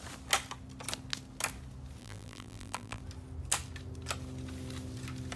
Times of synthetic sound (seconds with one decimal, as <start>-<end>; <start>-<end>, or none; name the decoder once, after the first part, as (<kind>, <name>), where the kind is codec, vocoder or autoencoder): 2.0-3.0 (vocoder, BigVGAN v2)